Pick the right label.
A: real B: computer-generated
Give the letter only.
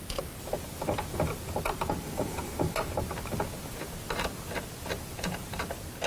A